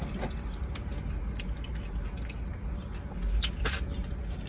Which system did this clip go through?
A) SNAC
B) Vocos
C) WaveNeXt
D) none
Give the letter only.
D